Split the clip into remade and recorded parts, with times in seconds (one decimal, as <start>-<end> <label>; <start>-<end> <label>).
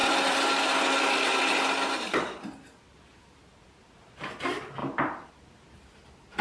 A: 0.0-4.8 recorded; 4.8-5.3 remade; 5.3-6.4 recorded